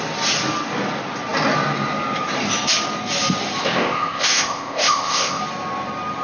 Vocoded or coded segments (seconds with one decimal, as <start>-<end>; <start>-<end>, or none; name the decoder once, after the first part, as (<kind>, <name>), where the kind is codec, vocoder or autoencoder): 3.6-5.4 (codec, ZipCodec)